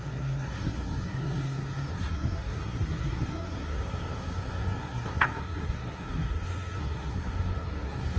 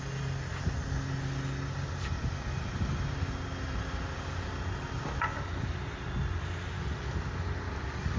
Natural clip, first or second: second